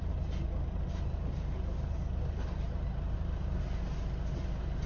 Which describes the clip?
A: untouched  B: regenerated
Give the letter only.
A